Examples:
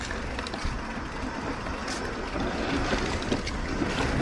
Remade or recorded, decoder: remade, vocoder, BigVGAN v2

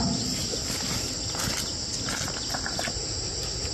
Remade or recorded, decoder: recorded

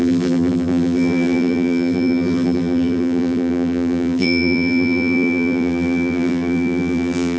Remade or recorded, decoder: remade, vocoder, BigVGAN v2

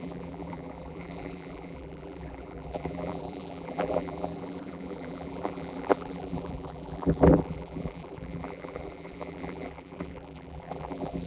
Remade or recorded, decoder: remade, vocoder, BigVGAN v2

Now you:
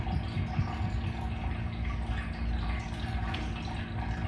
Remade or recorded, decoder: recorded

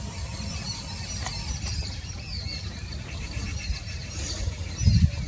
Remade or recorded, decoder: recorded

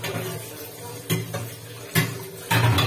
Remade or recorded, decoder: recorded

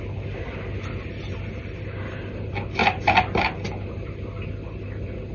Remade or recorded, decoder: recorded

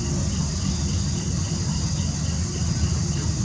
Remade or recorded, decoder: recorded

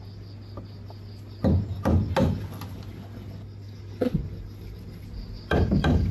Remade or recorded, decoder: recorded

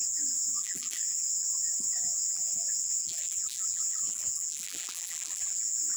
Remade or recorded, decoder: remade, vocoder, BigVGAN v2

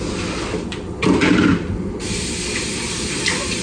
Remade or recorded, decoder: recorded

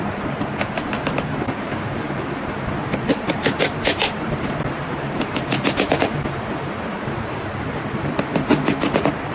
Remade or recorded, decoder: remade, vocoder, BigVGAN v2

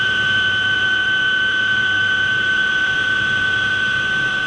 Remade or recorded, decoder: remade, vocoder, BigVGAN v2